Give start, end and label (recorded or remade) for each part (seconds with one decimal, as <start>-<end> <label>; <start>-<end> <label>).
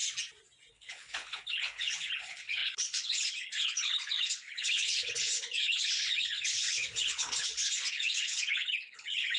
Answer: 0.0-0.7 recorded; 0.7-9.4 remade